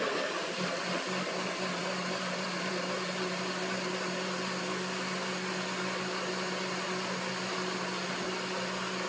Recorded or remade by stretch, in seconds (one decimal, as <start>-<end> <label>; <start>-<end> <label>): 0.0-9.1 recorded